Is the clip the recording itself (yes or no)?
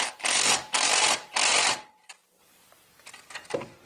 no